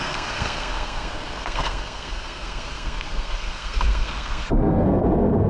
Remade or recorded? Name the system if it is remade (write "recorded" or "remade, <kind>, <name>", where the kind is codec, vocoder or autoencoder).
remade, codec, SNAC